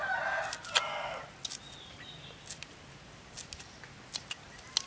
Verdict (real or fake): real